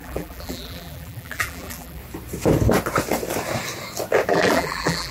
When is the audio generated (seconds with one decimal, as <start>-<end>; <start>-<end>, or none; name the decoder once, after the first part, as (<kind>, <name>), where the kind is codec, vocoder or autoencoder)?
0.0-2.0 (vocoder, BigVGAN v2); 4.3-5.1